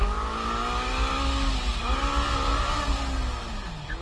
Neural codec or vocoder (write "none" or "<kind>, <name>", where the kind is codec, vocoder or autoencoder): none